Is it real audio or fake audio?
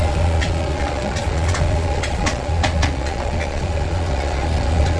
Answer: fake